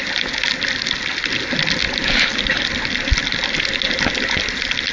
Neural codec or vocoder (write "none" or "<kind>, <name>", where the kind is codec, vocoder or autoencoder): none